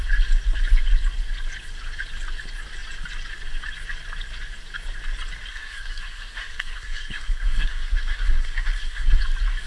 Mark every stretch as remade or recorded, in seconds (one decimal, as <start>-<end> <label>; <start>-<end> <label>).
0.0-5.5 recorded; 5.5-9.2 remade; 9.2-9.7 recorded